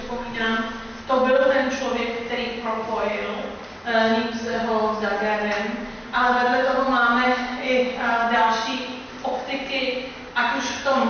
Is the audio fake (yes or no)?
no